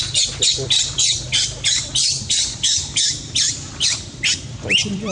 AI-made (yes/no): yes